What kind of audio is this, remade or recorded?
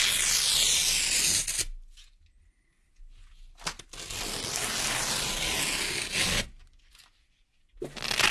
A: recorded